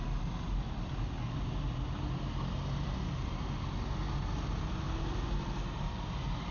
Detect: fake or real real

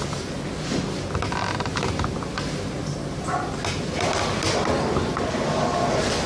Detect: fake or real real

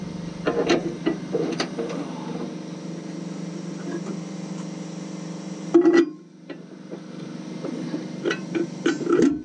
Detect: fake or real real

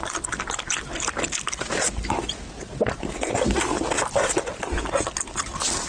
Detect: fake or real real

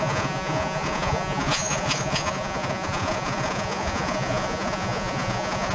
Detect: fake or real fake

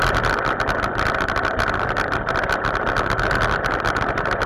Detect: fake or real real